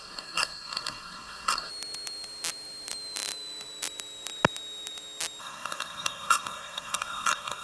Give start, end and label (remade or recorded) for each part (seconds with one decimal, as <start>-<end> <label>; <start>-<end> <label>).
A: 0.0-1.7 remade; 1.7-5.4 recorded; 5.4-7.6 remade